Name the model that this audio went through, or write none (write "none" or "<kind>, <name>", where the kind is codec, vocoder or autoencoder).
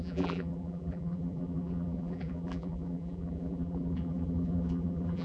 vocoder, BigVGAN v2